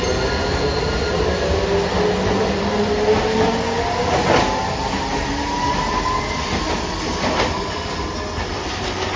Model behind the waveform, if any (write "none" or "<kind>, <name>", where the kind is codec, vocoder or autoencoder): none